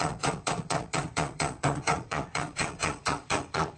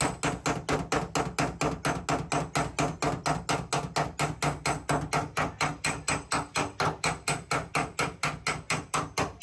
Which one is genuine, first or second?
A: second